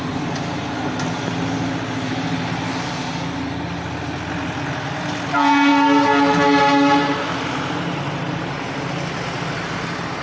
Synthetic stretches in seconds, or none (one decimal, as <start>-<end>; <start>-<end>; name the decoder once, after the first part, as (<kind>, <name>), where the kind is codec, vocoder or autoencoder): none